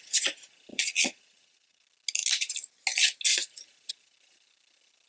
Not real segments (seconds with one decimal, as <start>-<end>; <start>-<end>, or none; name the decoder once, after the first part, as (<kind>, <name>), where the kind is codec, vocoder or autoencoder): 0.7-1.8 (vocoder, Vocos)